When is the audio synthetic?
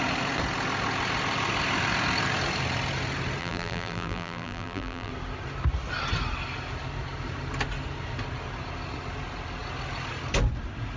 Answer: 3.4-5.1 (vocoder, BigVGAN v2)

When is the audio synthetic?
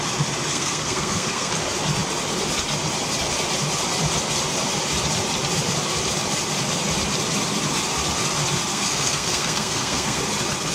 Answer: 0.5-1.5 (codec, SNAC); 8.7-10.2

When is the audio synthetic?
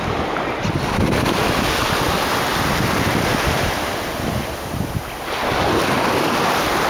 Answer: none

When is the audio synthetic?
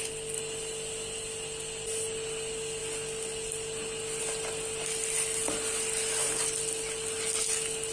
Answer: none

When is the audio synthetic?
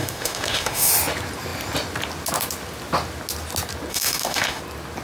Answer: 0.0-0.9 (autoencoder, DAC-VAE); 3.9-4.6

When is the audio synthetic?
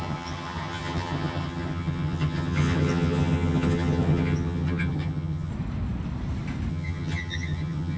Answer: 0.0-5.5 (vocoder, HiFi-GAN); 6.7-8.0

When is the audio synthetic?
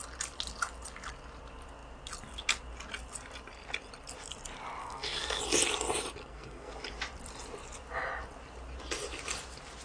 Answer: 4.8-5.4 (codec, SNAC); 6.2-6.7